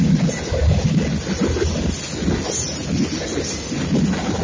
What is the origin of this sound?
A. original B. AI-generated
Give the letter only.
A